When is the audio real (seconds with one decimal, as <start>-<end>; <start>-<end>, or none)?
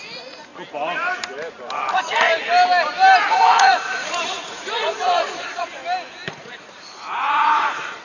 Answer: 0.5-1.9; 2.3-3.3; 5.8-6.3